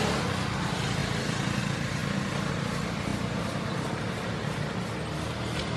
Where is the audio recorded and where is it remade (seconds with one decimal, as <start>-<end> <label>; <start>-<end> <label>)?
0.0-5.8 recorded